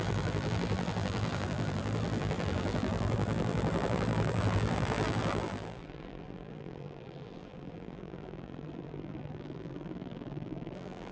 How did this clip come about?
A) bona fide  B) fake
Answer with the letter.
B